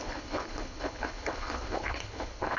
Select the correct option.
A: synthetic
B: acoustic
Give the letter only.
A